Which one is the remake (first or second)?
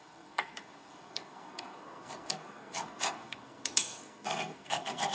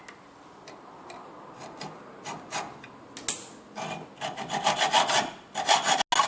first